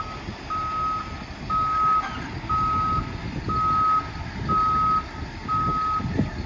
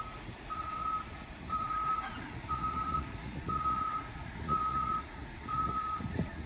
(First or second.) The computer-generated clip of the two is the second